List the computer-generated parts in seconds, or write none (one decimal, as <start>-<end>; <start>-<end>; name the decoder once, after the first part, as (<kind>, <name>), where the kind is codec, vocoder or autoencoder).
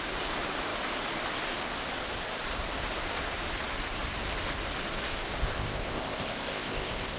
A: 5.4-7.2 (codec, ZipCodec)